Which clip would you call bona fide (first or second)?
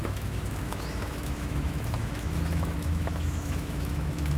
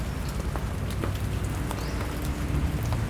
second